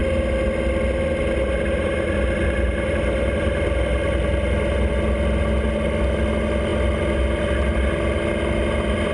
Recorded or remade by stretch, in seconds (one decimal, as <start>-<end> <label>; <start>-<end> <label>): 0.0-9.1 recorded